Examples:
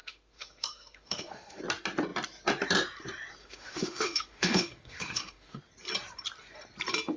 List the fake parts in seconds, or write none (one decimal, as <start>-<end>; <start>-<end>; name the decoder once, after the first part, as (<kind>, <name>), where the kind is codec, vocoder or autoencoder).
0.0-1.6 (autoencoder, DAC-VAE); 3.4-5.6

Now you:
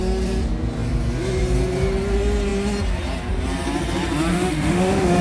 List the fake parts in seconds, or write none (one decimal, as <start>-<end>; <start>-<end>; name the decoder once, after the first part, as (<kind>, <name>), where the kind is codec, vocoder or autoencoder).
4.3-5.2 (autoencoder, DAC-VAE)

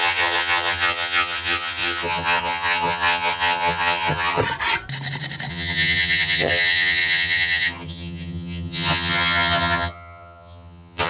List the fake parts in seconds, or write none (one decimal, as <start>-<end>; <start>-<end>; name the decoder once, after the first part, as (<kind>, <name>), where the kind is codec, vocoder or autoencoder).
0.0-4.4 (vocoder, HiFi-GAN); 5.5-11.1

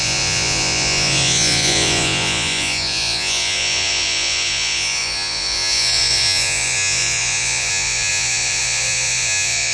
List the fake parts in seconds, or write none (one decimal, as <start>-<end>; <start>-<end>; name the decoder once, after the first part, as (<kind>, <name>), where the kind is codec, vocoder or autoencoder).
0.0-9.7 (vocoder, Vocos)

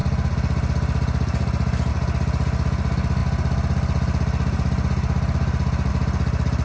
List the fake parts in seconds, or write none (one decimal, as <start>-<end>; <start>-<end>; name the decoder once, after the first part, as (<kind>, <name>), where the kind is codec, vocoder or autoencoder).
none